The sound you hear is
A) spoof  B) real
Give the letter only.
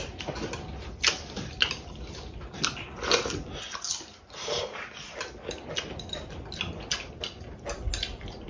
B